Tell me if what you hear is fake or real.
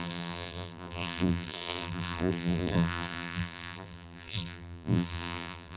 fake